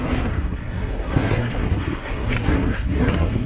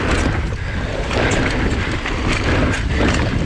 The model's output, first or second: first